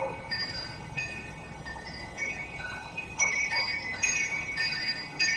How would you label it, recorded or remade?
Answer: remade